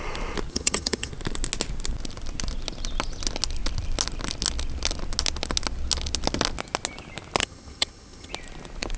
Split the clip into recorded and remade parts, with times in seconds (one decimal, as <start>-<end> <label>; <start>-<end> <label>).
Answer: 0.0-0.5 recorded; 0.5-1.1 remade; 1.1-7.4 recorded; 7.4-8.3 remade; 8.3-9.0 recorded